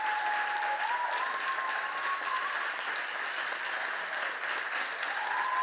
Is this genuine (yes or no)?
yes